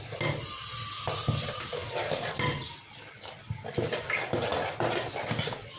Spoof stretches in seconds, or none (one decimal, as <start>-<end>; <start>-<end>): none